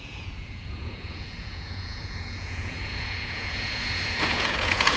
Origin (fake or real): fake